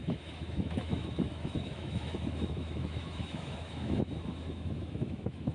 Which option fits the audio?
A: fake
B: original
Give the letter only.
A